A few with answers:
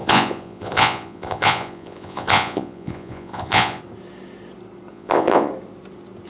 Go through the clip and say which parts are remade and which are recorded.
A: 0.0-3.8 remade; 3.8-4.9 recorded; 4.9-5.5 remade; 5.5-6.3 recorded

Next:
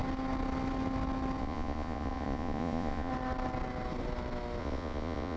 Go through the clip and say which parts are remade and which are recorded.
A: 0.0-1.4 recorded; 1.4-3.1 remade; 3.1-4.6 recorded; 4.6-5.4 remade

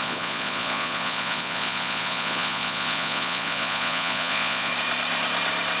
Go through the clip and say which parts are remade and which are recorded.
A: 0.0-4.7 remade; 4.7-5.8 recorded

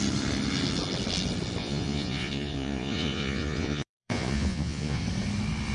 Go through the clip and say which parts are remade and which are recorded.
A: 0.0-1.6 recorded; 1.6-5.0 remade; 5.0-5.7 recorded